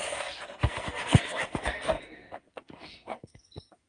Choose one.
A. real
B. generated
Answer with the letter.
B